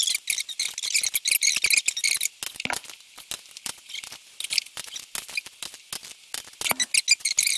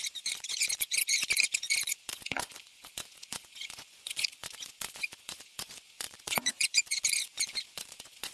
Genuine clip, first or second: first